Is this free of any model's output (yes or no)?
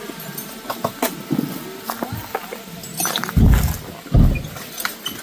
yes